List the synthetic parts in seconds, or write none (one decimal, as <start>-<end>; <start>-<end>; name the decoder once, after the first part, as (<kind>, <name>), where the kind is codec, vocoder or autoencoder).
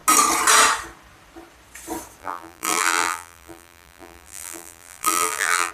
2.2-5.7 (vocoder, BigVGAN v2)